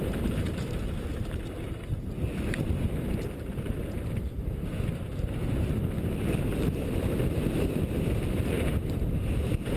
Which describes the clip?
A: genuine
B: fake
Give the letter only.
B